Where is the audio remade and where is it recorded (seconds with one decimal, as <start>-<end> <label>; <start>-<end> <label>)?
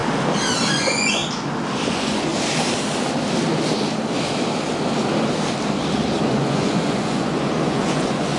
0.0-0.7 recorded; 0.7-1.2 remade; 1.2-1.9 recorded; 1.9-2.3 remade; 2.3-6.2 recorded; 6.2-8.4 remade